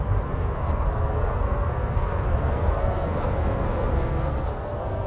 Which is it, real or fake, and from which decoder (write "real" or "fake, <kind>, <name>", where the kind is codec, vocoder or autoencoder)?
fake, codec, SNAC